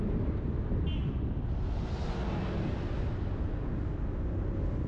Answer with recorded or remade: recorded